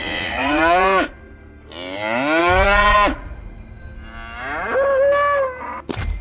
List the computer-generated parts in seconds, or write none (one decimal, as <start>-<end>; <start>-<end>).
0.0-1.1; 2.4-3.8